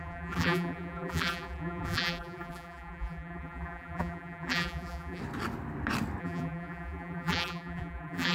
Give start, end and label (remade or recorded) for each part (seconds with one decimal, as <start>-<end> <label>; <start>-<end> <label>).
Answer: 0.0-5.2 remade; 5.2-6.2 recorded; 6.2-8.3 remade